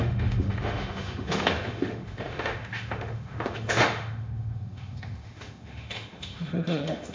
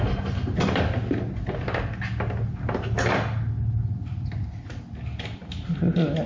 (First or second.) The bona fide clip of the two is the second